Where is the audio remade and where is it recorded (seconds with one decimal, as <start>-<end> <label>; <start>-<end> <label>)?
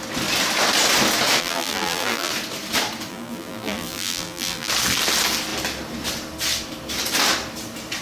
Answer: 0.0-1.4 recorded; 1.4-2.3 remade; 2.3-3.1 recorded; 3.1-4.7 remade; 4.7-8.0 recorded